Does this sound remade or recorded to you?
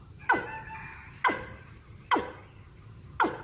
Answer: recorded